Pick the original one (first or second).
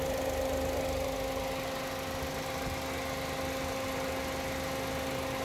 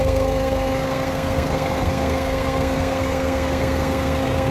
first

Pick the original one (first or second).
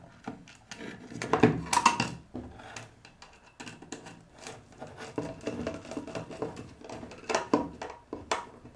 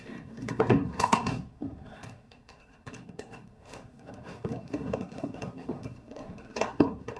first